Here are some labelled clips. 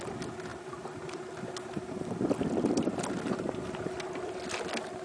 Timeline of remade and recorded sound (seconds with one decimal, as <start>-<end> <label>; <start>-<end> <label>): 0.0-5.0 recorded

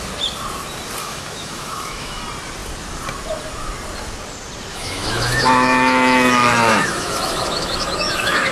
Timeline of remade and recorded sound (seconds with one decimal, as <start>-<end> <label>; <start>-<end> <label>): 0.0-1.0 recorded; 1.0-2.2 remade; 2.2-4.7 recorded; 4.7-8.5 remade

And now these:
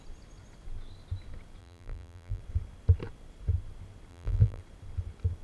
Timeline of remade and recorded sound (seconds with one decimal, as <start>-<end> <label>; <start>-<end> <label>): 0.0-1.6 recorded; 1.6-2.4 remade; 2.4-4.1 recorded; 4.1-4.6 remade; 4.6-5.4 recorded